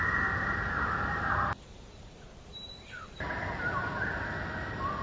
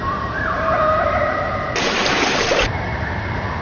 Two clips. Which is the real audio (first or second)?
first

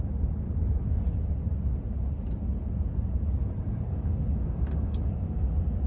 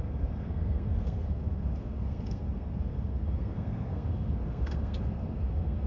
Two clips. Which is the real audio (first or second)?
first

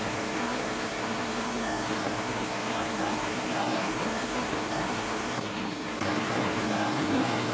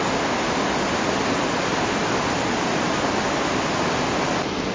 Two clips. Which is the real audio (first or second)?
second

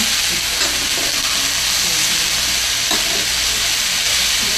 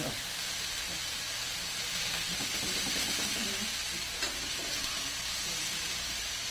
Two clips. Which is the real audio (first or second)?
first